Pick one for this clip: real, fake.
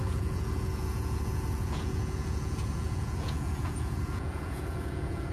fake